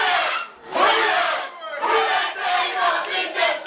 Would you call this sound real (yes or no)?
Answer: yes